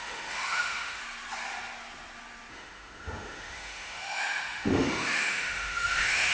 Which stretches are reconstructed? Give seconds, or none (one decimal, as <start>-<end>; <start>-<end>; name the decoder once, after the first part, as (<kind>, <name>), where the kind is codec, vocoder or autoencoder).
0.0-1.0 (autoencoder, DAC-VAE); 2.5-6.3